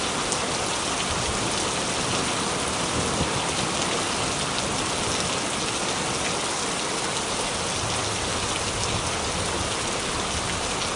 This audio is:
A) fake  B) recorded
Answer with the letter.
B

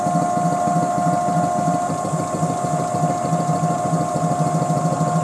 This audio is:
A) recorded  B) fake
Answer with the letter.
A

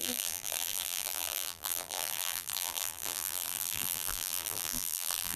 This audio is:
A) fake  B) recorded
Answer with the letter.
A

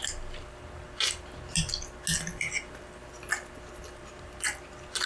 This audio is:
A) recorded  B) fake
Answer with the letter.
A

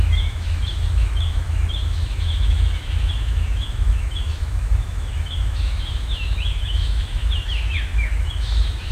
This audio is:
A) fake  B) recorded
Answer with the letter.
A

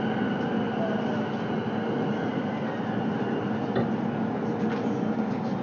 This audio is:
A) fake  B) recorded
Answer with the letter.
B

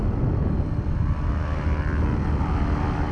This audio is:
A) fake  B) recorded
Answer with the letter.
B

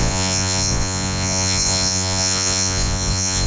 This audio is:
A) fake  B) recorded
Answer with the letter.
A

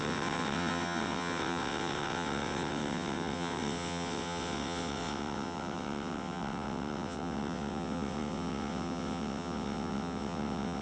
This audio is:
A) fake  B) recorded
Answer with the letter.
A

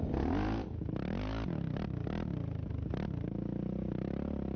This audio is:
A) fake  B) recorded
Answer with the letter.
B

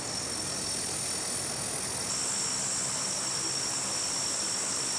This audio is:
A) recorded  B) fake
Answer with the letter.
A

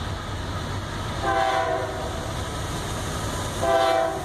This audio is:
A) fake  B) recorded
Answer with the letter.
B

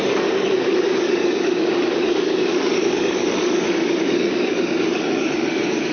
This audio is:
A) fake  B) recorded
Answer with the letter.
A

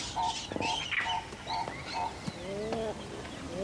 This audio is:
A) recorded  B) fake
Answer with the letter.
A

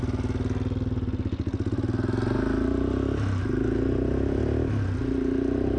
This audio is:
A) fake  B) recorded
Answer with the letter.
B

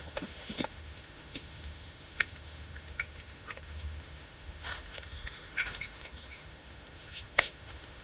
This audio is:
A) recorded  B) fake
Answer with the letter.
B